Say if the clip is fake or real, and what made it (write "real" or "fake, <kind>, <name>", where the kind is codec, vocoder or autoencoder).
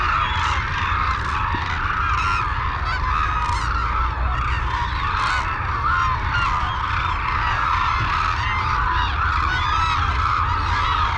real